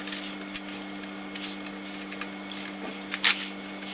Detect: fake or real real